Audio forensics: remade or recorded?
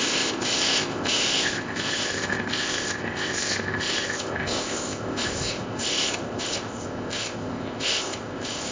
remade